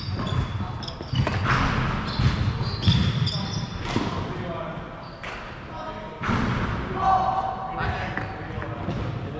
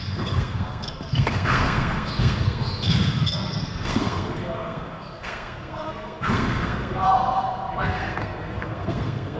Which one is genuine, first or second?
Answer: first